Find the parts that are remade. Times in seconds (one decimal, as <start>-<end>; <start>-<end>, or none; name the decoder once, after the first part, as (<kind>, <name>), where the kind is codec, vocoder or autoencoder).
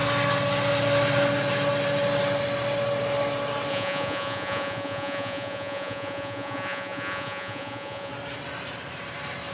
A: 3.7-8.1 (vocoder, Vocos)